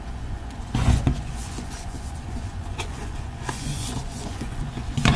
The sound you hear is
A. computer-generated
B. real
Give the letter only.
A